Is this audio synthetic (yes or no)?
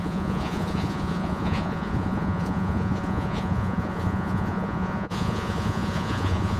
yes